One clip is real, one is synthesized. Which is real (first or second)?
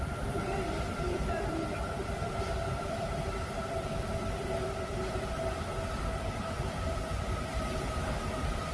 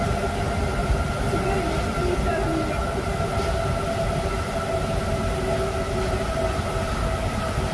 second